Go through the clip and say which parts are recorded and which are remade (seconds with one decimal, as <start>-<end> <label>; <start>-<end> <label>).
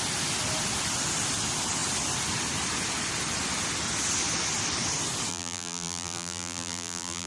0.0-5.3 recorded; 5.3-7.3 remade